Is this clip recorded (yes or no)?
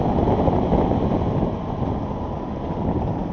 yes